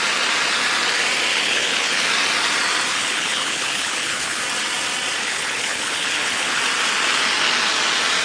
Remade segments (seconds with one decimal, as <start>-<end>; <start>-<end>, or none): 1.3-2.1; 2.9-4.4; 5.2-6.6